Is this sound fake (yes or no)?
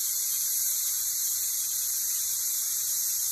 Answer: yes